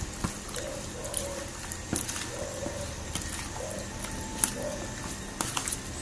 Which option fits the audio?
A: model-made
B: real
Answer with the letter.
B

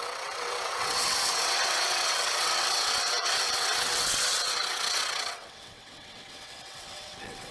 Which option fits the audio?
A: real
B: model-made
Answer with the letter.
B